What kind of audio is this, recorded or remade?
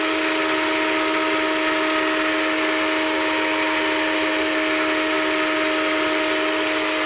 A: recorded